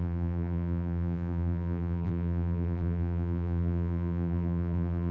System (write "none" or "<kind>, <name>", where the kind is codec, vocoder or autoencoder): vocoder, BigVGAN v2